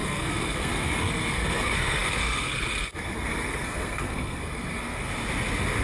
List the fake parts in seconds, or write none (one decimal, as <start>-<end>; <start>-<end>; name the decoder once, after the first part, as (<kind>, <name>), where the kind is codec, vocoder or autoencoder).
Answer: 0.0-5.1 (codec, SNAC)